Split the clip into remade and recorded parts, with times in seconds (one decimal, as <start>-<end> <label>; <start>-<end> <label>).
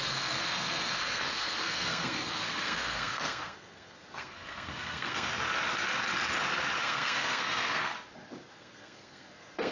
0.0-5.3 remade; 5.3-6.8 recorded; 6.8-7.9 remade; 7.9-8.5 recorded; 8.5-9.7 remade